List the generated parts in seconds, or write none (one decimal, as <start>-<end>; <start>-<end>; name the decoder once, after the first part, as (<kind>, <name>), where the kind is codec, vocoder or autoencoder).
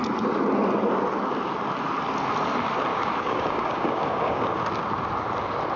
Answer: 2.9-4.6 (codec, DAC)